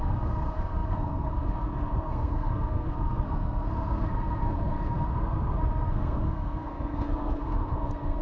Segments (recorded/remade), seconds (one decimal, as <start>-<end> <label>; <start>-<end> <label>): 0.0-8.2 remade